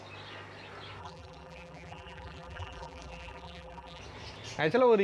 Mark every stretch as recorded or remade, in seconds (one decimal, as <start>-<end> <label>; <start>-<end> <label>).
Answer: 0.0-1.0 recorded; 1.0-4.0 remade; 4.0-5.0 recorded